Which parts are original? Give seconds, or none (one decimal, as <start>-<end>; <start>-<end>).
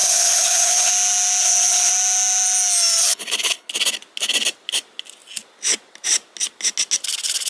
0.9-1.4; 1.9-3.0; 3.7-7.5